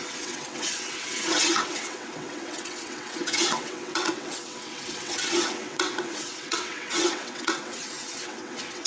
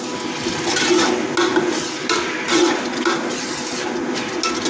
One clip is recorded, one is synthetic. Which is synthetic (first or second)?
first